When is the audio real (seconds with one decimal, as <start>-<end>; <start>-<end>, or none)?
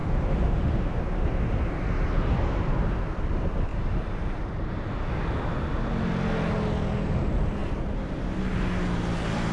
1.0-9.5